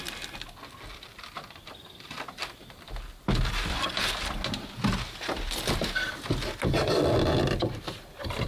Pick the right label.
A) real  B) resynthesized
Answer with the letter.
A